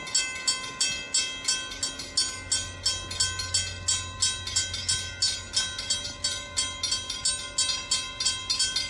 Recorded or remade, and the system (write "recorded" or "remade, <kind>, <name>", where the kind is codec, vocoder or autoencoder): recorded